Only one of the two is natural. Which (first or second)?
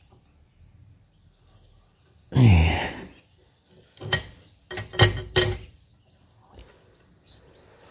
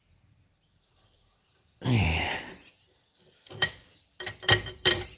first